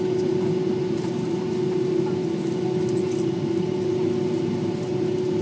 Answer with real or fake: real